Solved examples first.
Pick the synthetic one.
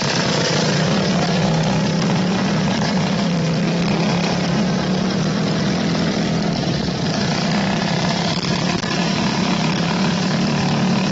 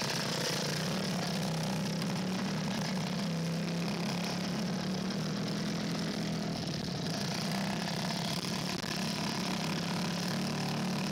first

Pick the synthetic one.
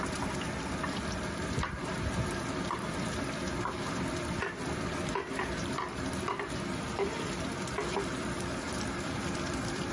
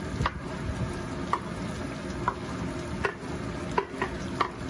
first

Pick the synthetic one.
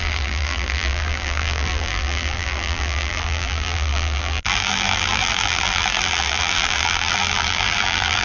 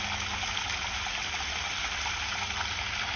first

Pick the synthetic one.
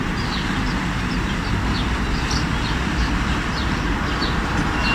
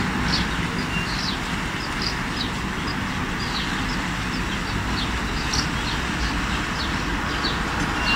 first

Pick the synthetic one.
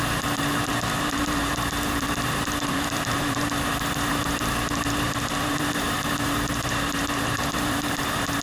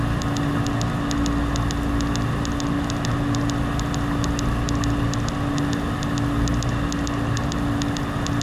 first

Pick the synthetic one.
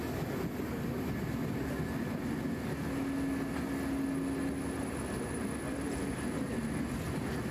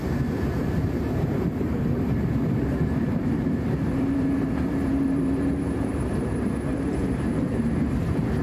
second